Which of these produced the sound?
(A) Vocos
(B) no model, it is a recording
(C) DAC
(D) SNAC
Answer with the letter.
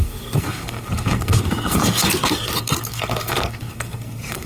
D